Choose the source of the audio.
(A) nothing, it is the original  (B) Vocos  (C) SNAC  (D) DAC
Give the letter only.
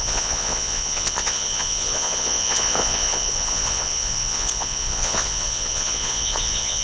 B